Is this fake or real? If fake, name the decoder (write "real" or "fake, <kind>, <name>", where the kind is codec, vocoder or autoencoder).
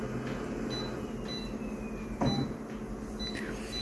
real